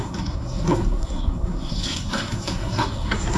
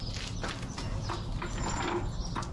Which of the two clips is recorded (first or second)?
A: second